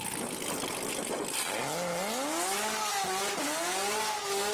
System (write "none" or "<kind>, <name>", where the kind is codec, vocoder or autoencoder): none